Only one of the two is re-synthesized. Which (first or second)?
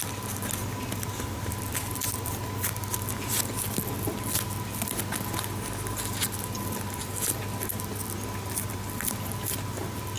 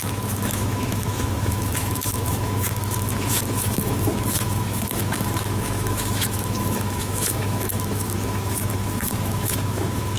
second